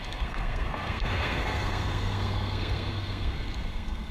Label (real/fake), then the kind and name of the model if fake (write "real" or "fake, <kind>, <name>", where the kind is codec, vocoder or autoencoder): fake, codec, SNAC